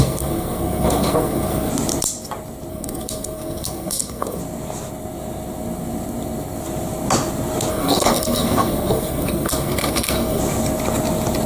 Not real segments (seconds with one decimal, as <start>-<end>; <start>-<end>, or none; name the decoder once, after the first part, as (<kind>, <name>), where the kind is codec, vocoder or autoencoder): 0.0-1.7 (codec, SNAC); 2.7-4.4; 7.7-10.4

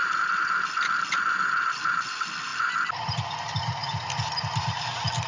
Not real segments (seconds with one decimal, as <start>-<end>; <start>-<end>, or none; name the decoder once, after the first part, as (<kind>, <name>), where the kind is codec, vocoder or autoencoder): none

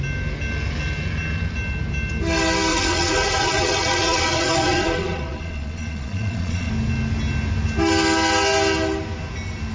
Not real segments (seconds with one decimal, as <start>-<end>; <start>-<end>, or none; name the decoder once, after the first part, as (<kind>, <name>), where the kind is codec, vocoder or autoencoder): 2.7-6.7 (vocoder, Vocos)